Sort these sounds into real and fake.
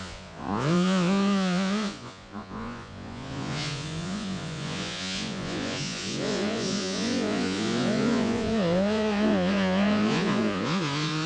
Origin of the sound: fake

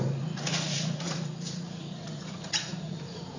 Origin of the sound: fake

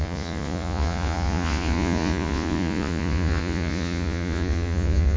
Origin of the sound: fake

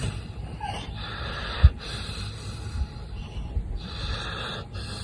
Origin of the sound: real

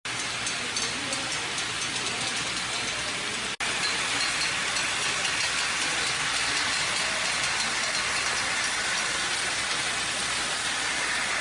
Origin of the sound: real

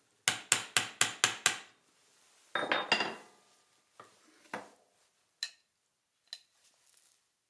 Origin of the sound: real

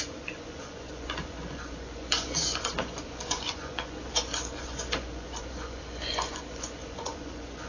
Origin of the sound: fake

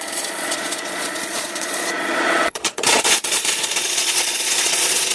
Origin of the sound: fake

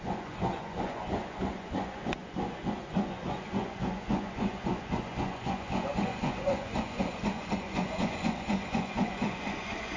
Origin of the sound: fake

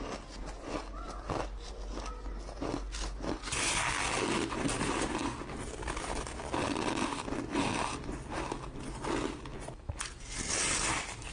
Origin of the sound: real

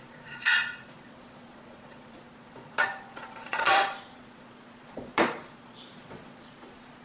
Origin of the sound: fake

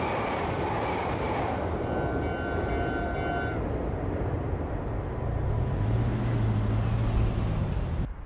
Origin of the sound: real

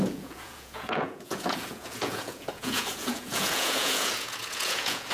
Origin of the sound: fake